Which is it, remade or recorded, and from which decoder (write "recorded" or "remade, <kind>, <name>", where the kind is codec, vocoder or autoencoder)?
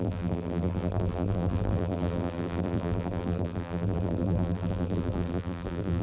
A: remade, vocoder, BigVGAN v2